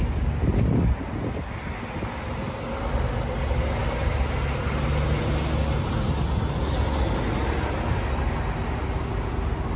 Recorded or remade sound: recorded